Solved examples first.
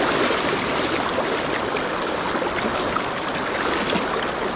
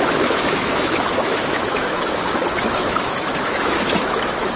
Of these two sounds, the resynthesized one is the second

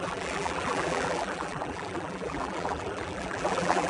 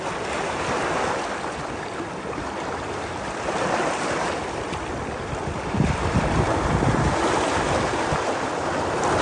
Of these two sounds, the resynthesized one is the first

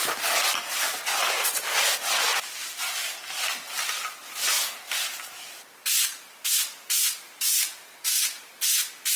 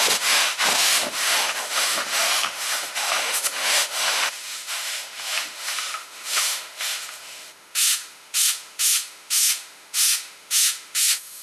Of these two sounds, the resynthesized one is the second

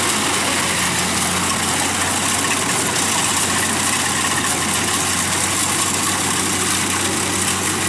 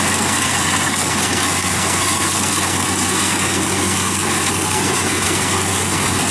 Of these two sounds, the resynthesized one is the second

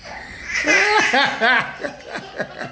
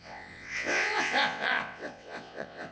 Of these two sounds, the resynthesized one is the second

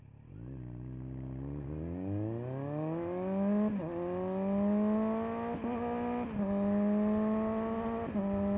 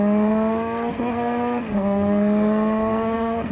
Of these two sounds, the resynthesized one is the second